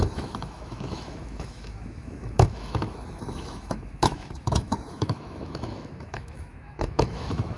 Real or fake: fake